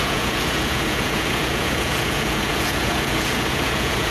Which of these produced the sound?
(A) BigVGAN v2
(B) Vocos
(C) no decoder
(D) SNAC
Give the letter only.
B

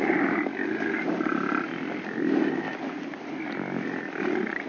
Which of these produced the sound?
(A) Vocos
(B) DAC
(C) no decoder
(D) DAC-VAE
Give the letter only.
C